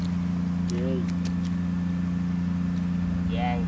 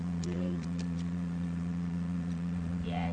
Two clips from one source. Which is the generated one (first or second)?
second